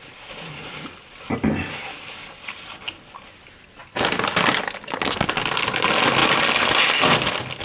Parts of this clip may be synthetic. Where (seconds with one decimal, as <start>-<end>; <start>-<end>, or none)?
none